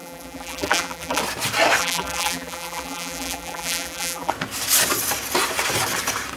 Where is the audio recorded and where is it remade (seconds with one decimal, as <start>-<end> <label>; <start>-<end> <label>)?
0.0-1.2 remade; 1.2-1.8 recorded; 1.8-4.3 remade; 4.3-6.4 recorded